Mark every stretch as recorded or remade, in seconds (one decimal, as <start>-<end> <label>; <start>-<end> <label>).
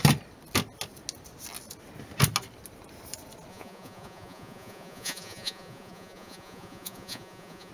0.0-3.5 recorded; 3.5-7.7 remade